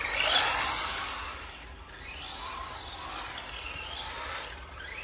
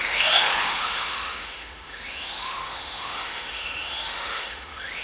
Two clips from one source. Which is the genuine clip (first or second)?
first